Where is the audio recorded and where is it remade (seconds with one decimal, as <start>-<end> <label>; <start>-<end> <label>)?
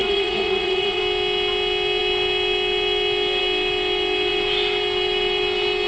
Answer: 0.0-1.0 remade; 1.0-5.9 recorded